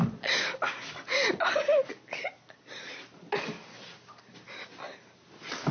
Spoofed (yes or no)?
no